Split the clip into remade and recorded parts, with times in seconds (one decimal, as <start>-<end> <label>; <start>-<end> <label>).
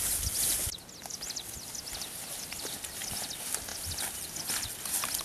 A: 0.0-5.2 recorded